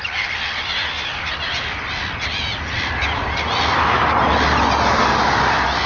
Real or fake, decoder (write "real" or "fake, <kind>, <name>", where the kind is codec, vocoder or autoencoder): real